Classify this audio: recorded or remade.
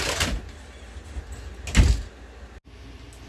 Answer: recorded